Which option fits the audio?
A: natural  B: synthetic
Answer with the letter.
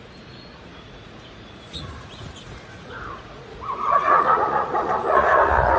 B